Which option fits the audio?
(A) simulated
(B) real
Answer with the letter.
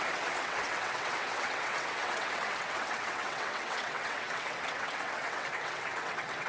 A